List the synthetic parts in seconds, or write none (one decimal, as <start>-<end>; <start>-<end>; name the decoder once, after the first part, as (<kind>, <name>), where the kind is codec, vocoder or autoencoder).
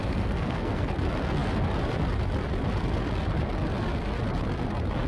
0.0-0.9 (codec, SNAC)